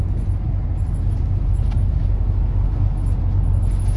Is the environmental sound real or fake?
real